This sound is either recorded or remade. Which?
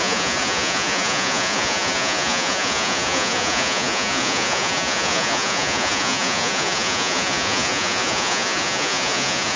remade